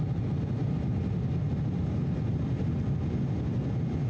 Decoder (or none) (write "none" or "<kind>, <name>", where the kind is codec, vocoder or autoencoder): none